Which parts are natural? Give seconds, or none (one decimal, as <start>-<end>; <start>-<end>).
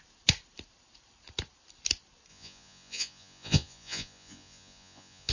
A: 0.0-2.3